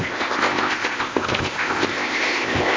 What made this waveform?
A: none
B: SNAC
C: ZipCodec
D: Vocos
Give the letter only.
C